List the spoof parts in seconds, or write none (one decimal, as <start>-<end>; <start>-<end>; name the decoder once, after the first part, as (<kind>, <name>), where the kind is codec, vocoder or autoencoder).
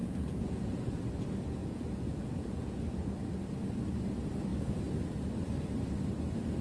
0.0-1.0 (vocoder, Vocos); 1.6-2.8